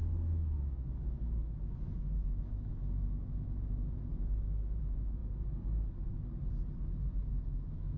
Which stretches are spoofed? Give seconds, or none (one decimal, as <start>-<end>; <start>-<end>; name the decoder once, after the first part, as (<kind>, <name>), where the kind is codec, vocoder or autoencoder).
0.0-4.1 (autoencoder, DAC-VAE); 4.8-5.2; 7.3-8.0